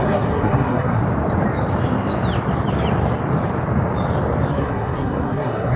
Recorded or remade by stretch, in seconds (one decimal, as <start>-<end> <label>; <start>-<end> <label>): 0.0-1.0 remade; 1.0-4.5 recorded; 4.5-5.8 remade